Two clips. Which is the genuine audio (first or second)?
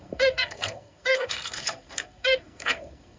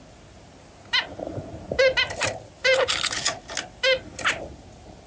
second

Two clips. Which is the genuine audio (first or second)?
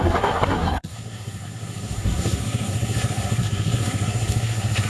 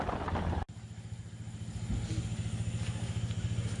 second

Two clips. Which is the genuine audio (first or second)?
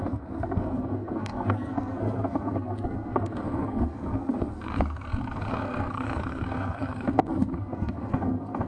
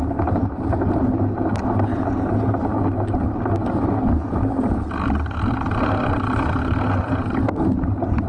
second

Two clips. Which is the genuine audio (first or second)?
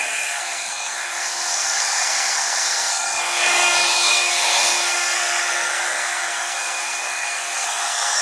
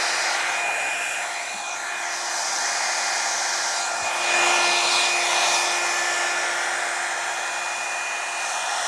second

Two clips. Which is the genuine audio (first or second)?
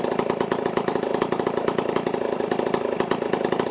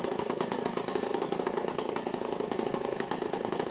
first